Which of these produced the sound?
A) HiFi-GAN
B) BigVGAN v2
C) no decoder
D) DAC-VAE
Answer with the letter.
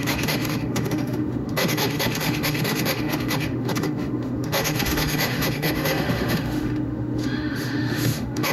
D